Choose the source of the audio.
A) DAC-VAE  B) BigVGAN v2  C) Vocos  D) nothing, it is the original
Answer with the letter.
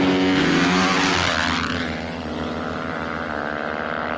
D